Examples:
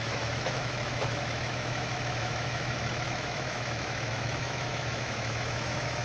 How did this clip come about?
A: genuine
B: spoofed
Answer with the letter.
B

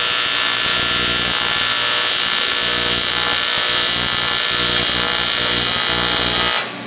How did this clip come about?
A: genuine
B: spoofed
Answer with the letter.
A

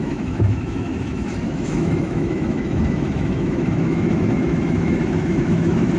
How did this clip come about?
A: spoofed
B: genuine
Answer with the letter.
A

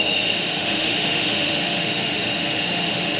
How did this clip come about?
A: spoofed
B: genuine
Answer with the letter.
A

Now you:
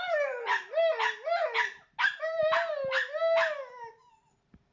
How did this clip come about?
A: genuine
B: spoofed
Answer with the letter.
A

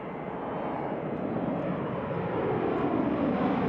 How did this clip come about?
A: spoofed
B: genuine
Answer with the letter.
B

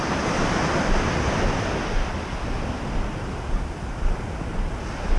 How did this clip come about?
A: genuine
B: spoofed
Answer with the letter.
A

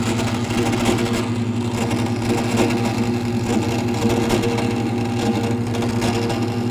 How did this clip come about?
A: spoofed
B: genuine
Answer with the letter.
B